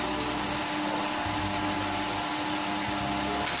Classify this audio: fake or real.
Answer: real